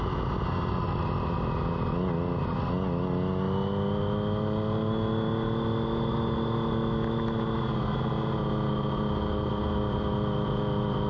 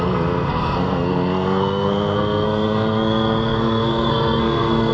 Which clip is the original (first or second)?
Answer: first